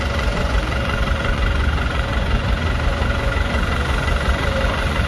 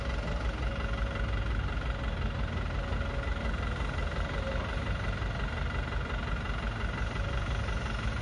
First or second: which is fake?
first